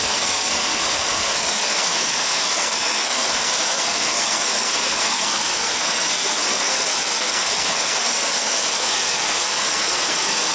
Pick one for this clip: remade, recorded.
remade